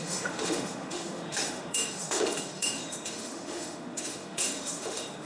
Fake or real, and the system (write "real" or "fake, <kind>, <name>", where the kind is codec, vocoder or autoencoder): fake, autoencoder, DAC-VAE